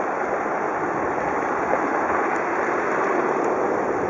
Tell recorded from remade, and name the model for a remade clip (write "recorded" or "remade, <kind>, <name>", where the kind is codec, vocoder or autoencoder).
recorded